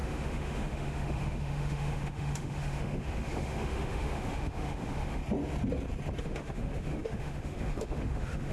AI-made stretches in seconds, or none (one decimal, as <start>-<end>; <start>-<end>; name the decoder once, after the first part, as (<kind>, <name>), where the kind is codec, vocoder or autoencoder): 0.0-5.2 (autoencoder, DAC-VAE); 6.2-8.5